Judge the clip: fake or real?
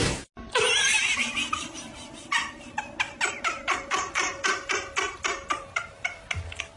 real